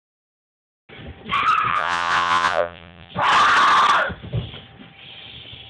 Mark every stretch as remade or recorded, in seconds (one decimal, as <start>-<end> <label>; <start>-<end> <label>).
0.0-1.7 recorded; 1.7-3.1 remade; 3.1-5.7 recorded